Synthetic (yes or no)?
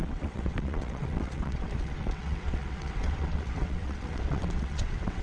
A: yes